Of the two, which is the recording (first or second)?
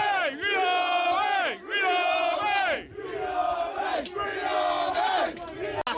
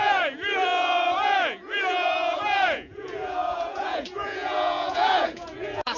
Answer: first